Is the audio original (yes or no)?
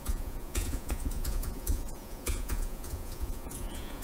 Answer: no